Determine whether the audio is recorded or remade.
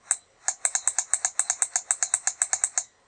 recorded